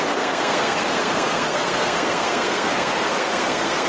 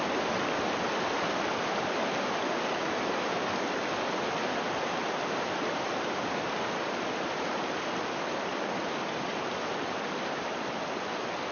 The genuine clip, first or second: second